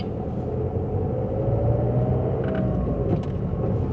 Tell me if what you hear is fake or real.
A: real